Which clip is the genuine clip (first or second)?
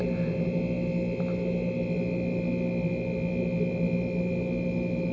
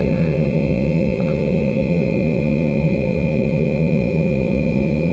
first